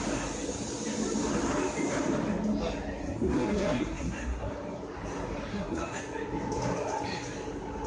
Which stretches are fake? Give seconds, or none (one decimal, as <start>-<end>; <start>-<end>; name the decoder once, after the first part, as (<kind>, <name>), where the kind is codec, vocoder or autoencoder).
3.0-4.5 (codec, SNAC); 5.5-6.0

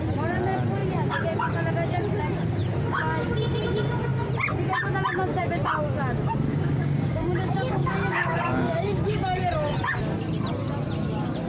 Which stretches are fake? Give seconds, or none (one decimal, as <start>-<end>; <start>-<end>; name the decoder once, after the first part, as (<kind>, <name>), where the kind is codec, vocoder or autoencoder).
6.5-9.4 (codec, DAC)

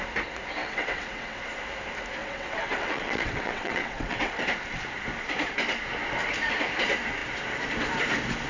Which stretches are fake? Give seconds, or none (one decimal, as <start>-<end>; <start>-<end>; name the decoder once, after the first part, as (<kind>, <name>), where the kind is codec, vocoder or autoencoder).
0.6-1.4 (vocoder, WaveNeXt); 2.2-4.4